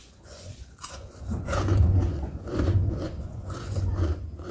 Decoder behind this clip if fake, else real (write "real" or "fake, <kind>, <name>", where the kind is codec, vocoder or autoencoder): fake, vocoder, Vocos